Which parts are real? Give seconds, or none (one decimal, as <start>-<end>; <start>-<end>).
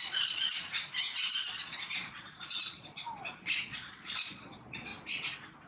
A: 0.9-1.4; 4.9-5.7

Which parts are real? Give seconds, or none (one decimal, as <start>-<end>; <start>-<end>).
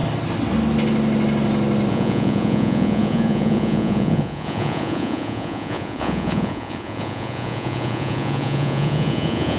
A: 0.0-1.9